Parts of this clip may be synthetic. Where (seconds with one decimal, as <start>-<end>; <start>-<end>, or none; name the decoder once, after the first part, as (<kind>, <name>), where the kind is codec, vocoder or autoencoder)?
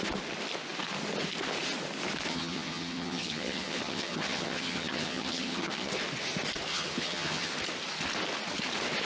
2.3-5.9 (vocoder, HiFi-GAN); 6.7-7.5